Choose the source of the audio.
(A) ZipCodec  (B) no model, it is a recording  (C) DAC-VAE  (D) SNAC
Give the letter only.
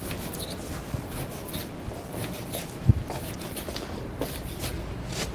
B